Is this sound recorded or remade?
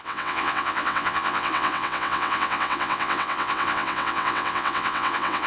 remade